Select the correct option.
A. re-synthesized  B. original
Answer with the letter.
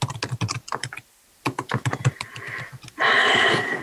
B